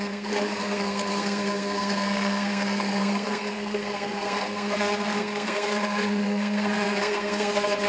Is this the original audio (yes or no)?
no